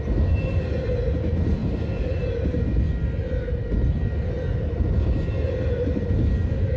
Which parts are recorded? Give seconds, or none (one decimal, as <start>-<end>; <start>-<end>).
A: 0.0-6.8